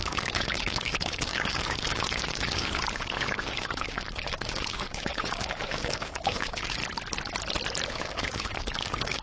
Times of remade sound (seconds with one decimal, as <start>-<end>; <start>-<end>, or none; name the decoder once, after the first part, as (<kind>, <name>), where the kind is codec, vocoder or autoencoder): 0.0-6.8 (codec, DAC); 7.9-9.2